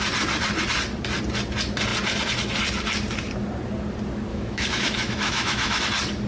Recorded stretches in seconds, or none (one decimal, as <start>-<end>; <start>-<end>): 0.0-4.3; 5.8-6.3